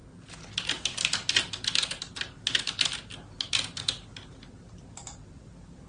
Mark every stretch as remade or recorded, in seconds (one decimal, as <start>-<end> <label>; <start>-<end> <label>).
0.0-5.9 recorded

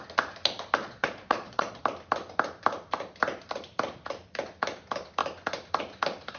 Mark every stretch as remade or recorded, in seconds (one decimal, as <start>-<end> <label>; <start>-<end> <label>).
0.0-0.8 recorded; 0.8-1.8 remade; 1.8-6.4 recorded

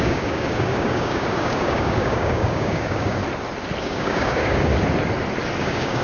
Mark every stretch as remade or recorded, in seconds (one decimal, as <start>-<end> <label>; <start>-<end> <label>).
0.0-3.2 remade; 3.2-3.8 recorded; 3.8-4.7 remade; 4.7-5.6 recorded; 5.6-6.0 remade

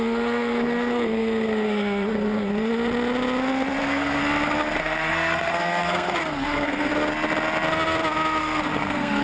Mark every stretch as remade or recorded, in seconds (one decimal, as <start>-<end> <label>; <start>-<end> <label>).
0.0-2.5 remade; 2.5-3.8 recorded; 3.8-4.2 remade; 4.2-4.8 recorded; 4.8-6.9 remade; 6.9-8.4 recorded; 8.4-9.2 remade

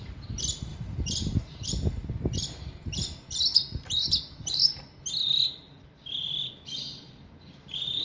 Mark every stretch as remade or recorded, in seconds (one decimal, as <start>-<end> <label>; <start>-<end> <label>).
0.0-0.7 recorded; 0.7-1.7 remade; 1.7-3.5 recorded; 3.5-4.8 remade; 4.8-8.0 recorded

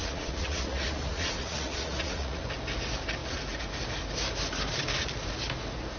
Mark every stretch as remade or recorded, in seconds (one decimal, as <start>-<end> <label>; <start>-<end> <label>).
0.0-2.4 remade; 2.4-6.0 recorded

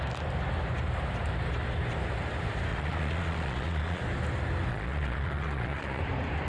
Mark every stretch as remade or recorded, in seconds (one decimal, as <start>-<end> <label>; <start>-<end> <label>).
0.0-2.7 recorded; 2.7-4.0 remade; 4.0-4.7 recorded; 4.7-6.0 remade; 6.0-6.5 recorded